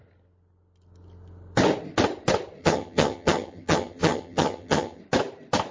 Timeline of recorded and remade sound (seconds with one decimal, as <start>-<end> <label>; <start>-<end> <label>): 0.0-2.6 recorded; 2.6-5.0 remade; 5.0-5.7 recorded